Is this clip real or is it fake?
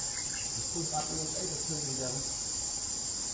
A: real